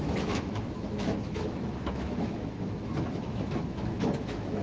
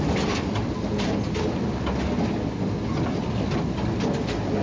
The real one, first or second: second